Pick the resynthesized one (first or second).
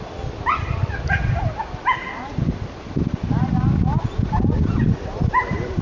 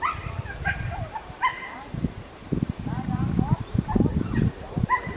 second